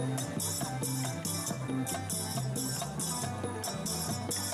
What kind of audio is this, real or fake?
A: real